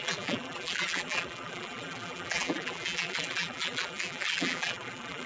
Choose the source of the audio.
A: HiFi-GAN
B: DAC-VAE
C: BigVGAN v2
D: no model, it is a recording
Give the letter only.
C